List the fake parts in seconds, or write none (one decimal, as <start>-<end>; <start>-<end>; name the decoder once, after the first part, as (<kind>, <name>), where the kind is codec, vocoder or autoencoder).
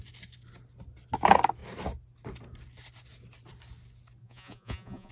4.2-5.1 (vocoder, Vocos)